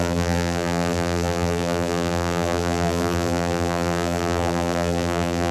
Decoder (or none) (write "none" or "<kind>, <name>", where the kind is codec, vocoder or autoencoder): vocoder, BigVGAN v2